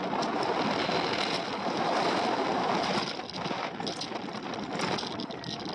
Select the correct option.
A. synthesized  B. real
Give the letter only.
B